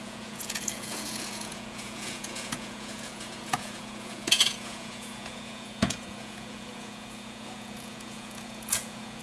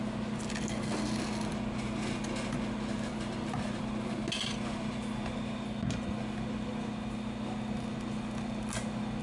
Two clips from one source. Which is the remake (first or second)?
first